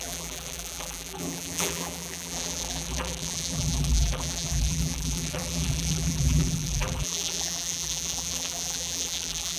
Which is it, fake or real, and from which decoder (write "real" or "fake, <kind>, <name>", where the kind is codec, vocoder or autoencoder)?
fake, vocoder, BigVGAN v2